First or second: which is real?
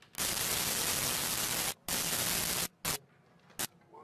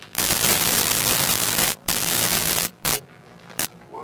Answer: first